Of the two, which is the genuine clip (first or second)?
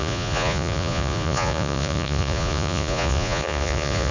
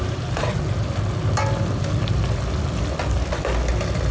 second